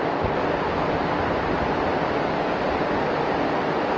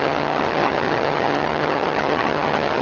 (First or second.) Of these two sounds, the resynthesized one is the second